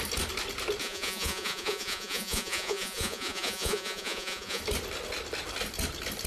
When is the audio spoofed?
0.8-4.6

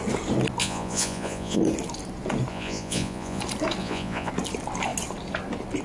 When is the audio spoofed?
0.6-1.6; 2.5-3.4; 3.8-4.3